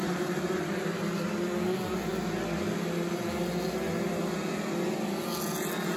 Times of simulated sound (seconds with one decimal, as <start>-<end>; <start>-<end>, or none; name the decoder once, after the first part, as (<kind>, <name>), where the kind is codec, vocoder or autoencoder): 0.0-1.5 (vocoder, BigVGAN v2)